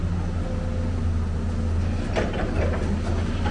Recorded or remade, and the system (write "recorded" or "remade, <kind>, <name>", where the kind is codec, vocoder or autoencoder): recorded